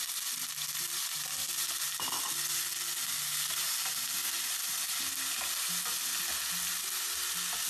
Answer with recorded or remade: recorded